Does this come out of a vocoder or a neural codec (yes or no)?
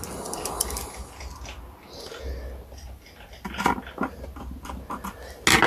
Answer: no